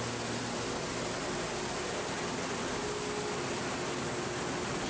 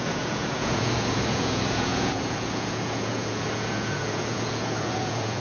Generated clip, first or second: second